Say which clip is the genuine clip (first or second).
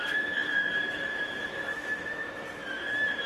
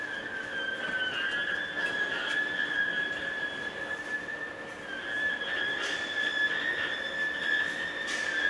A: second